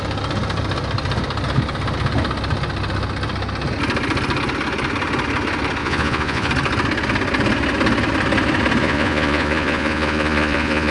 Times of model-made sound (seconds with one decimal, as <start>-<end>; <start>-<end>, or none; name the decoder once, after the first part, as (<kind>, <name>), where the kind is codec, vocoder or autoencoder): 5.8-6.5 (vocoder, Vocos); 8.8-10.9